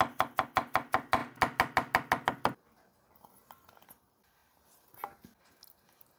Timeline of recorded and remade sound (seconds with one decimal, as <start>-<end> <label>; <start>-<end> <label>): 0.0-6.2 recorded